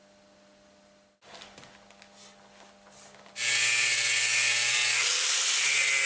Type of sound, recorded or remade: recorded